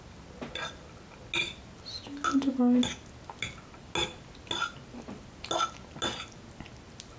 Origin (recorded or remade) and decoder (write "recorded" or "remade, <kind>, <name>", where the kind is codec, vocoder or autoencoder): recorded